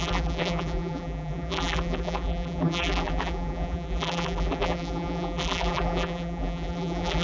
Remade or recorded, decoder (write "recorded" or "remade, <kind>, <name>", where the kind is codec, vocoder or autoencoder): remade, vocoder, BigVGAN v2